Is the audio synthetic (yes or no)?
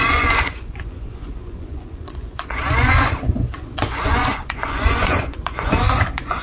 yes